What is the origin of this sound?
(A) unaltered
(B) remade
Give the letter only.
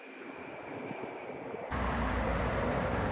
A